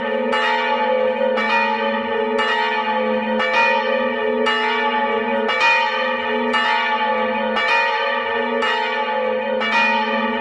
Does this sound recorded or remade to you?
recorded